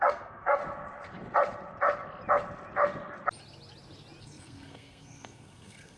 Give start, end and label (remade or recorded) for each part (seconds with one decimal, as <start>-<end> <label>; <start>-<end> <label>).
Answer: 0.0-0.6 remade; 0.6-4.2 recorded; 4.2-6.0 remade